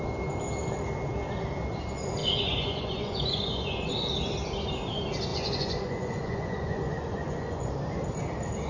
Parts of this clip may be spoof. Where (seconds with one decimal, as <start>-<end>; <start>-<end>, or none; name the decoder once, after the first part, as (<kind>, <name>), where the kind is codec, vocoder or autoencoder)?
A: 2.2-3.9 (vocoder, Vocos); 5.3-7.7